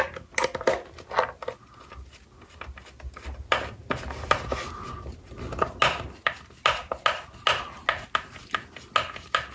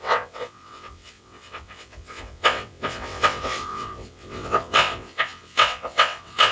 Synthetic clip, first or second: second